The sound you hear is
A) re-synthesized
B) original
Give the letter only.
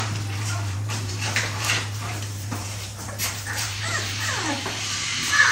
A